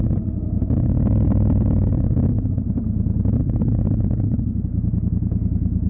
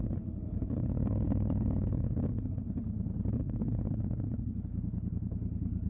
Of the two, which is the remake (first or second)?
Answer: second